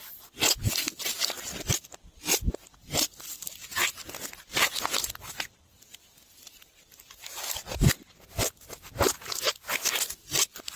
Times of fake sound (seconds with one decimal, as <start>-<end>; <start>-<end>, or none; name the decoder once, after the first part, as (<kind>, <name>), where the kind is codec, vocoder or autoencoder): none